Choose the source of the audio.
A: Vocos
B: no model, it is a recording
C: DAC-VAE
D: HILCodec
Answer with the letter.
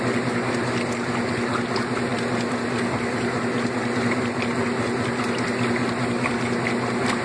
B